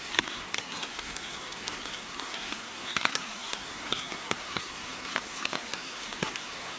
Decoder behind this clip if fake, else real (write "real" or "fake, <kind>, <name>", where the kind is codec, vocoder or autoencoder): fake, codec, SNAC